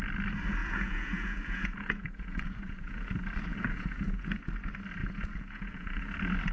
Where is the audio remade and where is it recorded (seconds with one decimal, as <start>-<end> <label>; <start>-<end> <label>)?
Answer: 0.0-0.6 recorded; 0.6-3.1 remade; 3.1-3.5 recorded; 3.5-4.4 remade; 4.4-5.0 recorded; 5.0-6.1 remade; 6.1-6.5 recorded